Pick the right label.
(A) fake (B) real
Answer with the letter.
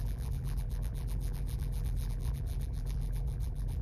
A